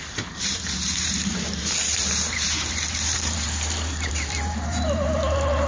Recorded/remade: remade